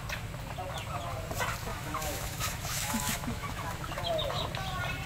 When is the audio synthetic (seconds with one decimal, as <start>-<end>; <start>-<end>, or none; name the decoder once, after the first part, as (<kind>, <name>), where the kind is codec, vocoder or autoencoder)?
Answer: 1.7-4.1 (autoencoder, DAC-VAE)